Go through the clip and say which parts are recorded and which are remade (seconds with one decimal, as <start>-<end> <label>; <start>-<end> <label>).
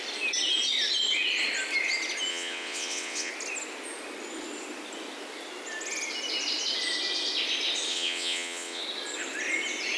0.0-2.3 recorded; 2.3-3.3 remade; 3.3-7.9 recorded; 7.9-8.8 remade; 8.8-10.0 recorded